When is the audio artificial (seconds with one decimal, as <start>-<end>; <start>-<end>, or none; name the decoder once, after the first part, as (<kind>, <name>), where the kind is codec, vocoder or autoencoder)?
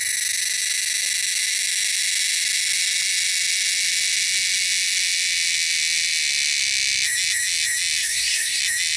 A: 8.0-8.6 (codec, SNAC)